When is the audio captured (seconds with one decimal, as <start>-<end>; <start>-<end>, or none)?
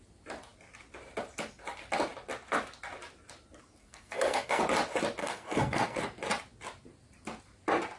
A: 0.0-3.8; 4.6-5.2; 6.0-8.0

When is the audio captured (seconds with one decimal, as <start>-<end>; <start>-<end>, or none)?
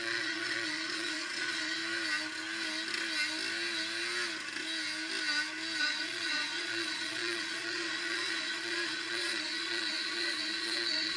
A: 1.8-5.8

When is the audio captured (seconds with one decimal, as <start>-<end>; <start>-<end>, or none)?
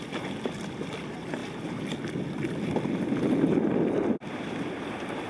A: 0.0-5.3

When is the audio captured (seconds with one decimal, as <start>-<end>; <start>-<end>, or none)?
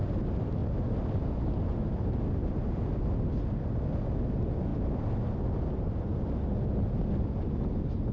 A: 0.0-8.1